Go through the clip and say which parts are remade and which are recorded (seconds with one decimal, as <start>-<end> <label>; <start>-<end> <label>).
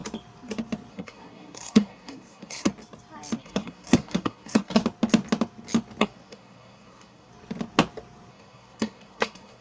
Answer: 0.0-0.9 recorded; 0.9-2.7 remade; 2.7-3.4 recorded; 3.4-4.8 remade; 4.8-6.0 recorded; 6.0-7.3 remade; 7.3-8.3 recorded; 8.3-9.6 remade